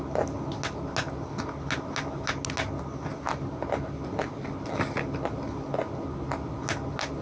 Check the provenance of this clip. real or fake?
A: real